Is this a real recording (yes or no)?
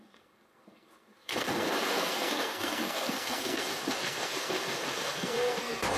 no